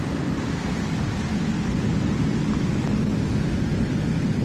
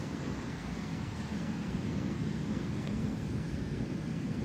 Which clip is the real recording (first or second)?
first